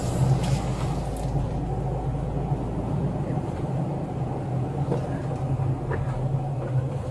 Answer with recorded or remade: recorded